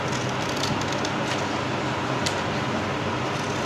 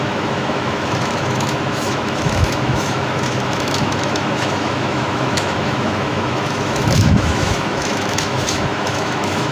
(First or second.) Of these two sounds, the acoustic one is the first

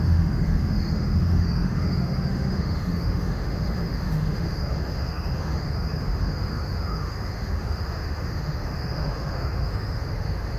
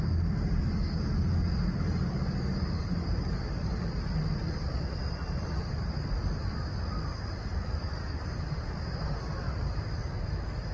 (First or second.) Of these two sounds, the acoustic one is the second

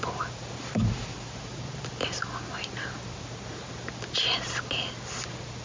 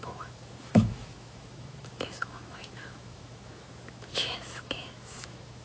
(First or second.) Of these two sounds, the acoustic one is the first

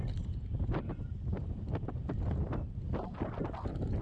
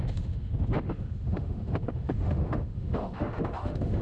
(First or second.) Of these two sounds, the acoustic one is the first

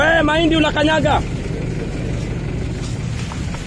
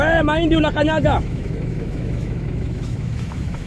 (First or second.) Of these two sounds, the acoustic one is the first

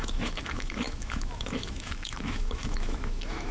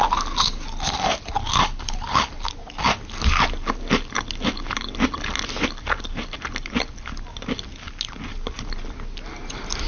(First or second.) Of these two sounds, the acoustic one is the second